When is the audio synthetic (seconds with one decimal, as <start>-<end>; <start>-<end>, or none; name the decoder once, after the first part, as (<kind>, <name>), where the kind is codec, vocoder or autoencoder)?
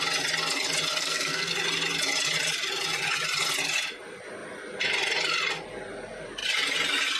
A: 1.0-1.5 (codec, SNAC)